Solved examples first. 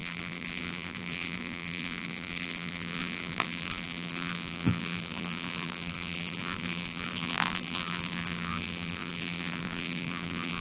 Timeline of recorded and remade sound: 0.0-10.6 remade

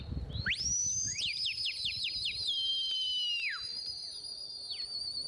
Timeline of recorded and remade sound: 0.0-0.8 recorded; 0.8-2.0 remade; 2.0-5.3 recorded

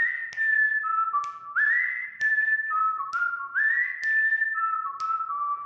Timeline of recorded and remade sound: 0.0-2.0 recorded; 2.0-3.5 remade; 3.5-4.4 recorded; 4.4-5.0 remade; 5.0-5.7 recorded

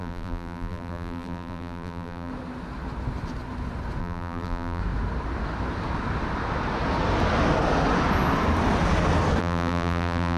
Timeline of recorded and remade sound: 0.0-2.3 remade; 2.3-4.0 recorded; 4.0-4.8 remade; 4.8-9.4 recorded; 9.4-10.4 remade

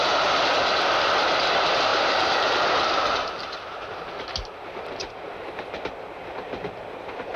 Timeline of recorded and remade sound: 0.0-1.9 recorded; 1.9-5.9 remade; 5.9-7.4 recorded

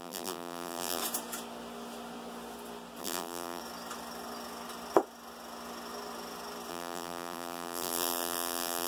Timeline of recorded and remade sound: 0.0-1.0 remade; 1.0-3.0 recorded; 3.0-3.6 remade; 3.6-6.7 recorded; 6.7-8.9 remade

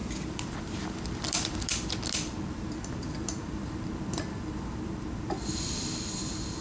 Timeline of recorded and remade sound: 0.0-6.6 remade